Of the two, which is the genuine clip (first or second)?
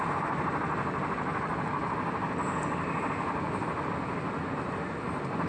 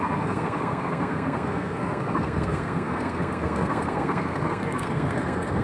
first